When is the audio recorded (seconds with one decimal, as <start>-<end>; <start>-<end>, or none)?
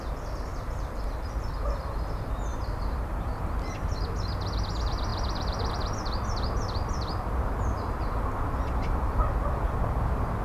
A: 0.0-2.5; 3.4-10.4